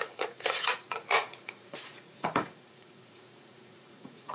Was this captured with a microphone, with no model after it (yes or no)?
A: no